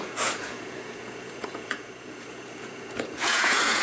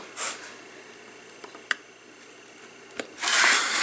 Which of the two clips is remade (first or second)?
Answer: first